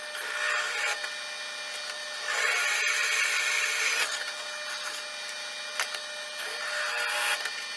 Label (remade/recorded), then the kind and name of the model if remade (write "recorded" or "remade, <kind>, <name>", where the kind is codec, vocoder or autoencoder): recorded